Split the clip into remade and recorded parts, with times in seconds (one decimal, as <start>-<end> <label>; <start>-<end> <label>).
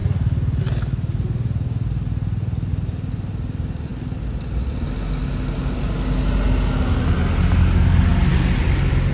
0.0-8.1 recorded; 8.1-9.1 remade